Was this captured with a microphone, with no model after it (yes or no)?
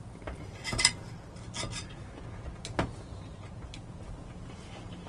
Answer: yes